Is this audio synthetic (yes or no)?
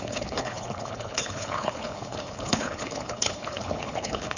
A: yes